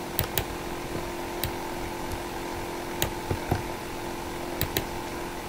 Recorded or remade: recorded